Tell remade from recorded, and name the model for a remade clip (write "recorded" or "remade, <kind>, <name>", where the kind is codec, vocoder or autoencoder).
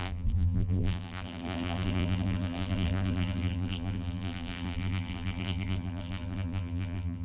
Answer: remade, vocoder, BigVGAN v2